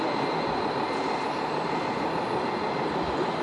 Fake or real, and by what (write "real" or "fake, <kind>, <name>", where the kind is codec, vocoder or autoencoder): real